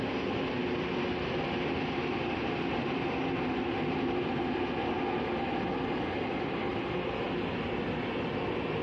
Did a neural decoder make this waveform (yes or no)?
no